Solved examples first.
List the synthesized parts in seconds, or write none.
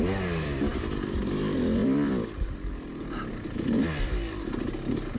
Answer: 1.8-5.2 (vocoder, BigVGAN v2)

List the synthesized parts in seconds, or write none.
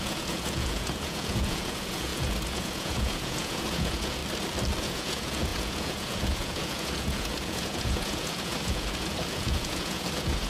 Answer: 0.0-4.2 (vocoder, Vocos); 4.8-10.5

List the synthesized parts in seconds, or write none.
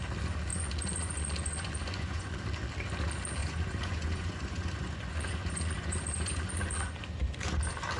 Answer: 0.5-2.4 (vocoder, Vocos); 3.4-7.0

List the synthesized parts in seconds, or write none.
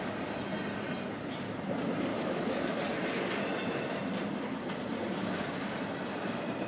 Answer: 2.1-2.6 (autoencoder, DAC-VAE)